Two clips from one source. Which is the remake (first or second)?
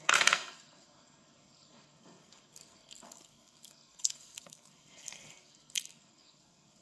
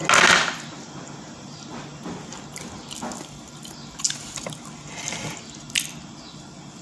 first